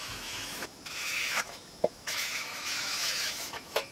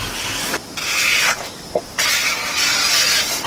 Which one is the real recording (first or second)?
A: second